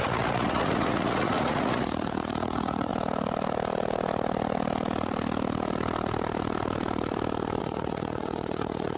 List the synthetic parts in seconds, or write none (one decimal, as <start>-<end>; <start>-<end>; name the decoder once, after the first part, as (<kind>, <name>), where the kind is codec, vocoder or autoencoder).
0.0-2.9 (vocoder, Vocos); 7.6-9.0